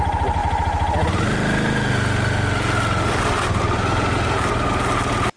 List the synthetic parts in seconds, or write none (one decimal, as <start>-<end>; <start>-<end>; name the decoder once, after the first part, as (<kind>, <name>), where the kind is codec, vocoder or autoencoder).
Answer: none

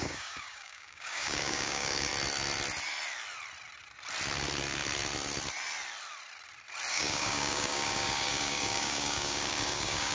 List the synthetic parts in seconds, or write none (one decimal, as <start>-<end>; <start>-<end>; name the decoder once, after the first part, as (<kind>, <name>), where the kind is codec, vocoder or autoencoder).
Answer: 0.0-2.1 (codec, DAC); 6.9-10.1

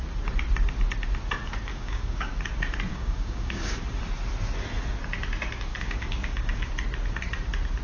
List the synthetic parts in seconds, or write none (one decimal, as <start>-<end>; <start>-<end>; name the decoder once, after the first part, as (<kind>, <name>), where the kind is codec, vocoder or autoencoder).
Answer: 1.7-2.3 (codec, DAC); 2.9-3.8; 5.7-6.7

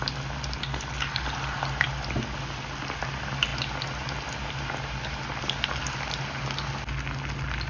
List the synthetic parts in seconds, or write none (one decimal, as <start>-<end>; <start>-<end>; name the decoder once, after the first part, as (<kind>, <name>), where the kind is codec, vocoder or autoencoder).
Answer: none